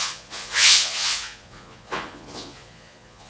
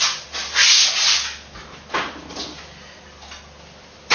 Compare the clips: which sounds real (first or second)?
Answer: second